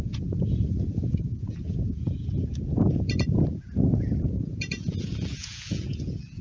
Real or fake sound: fake